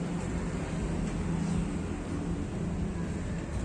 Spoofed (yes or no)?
no